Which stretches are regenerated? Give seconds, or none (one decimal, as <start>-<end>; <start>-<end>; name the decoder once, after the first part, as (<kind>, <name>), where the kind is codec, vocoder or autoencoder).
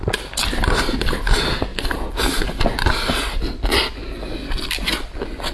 none